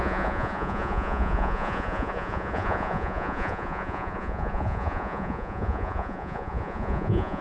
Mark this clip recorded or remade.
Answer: remade